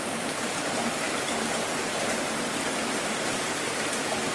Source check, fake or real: real